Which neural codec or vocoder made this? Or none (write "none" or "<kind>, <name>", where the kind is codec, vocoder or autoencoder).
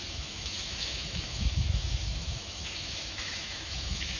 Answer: autoencoder, DAC-VAE